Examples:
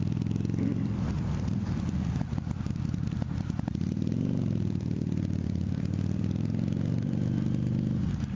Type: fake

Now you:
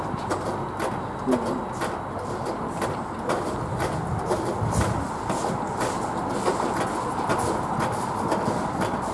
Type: real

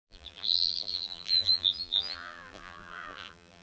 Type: fake